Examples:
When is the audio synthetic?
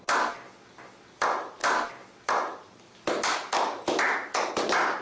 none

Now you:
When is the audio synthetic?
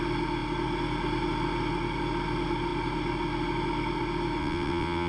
4.4-5.1 (vocoder, WaveNeXt)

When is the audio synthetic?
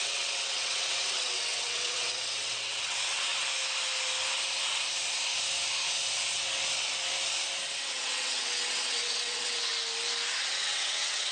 0.0-3.3 (vocoder, WaveNeXt); 7.7-9.7; 10.5-11.3